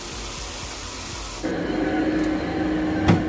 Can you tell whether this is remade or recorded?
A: recorded